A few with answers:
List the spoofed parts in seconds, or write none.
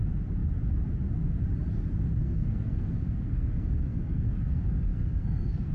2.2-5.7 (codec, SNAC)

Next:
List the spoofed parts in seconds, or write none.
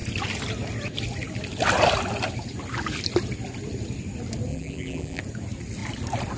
4.5-5.2 (vocoder, BigVGAN v2)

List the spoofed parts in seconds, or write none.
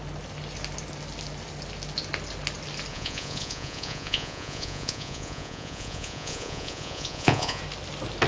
2.9-7.6 (vocoder, Vocos)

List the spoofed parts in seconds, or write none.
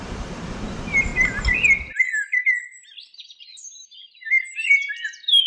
0.0-1.1 (vocoder, BigVGAN v2); 3.4-5.5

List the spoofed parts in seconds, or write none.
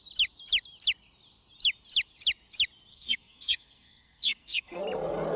2.9-4.8 (codec, SNAC)